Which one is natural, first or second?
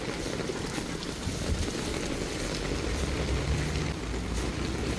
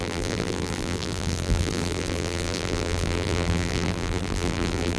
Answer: first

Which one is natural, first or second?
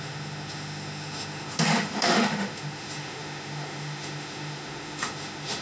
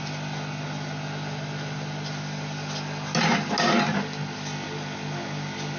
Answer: second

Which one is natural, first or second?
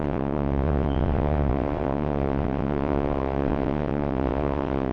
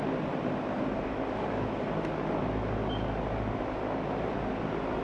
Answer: second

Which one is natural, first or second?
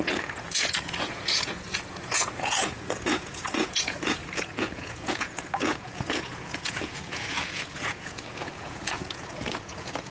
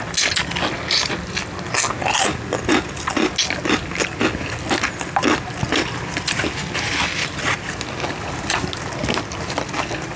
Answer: second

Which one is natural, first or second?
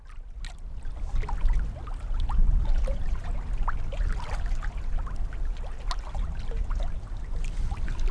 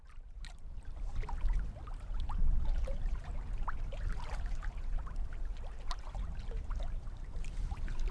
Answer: first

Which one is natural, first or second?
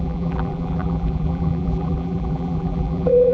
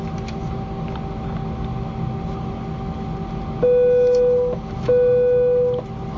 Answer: second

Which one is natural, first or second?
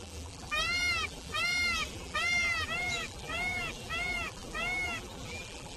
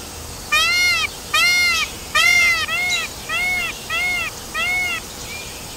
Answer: second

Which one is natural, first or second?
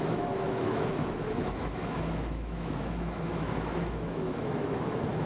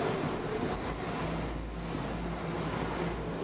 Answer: second